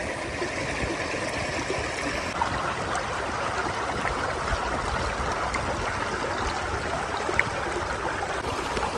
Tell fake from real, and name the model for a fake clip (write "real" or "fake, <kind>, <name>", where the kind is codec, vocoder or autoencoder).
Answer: real